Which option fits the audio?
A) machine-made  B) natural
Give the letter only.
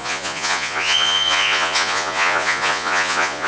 A